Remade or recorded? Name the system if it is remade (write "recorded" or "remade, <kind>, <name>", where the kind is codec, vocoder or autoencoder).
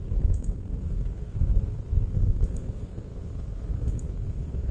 remade, codec, SNAC